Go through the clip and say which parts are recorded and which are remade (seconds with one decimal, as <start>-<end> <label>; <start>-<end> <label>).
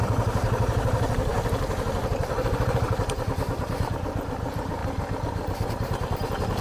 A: 0.0-1.3 remade; 1.3-2.2 recorded; 2.2-6.6 remade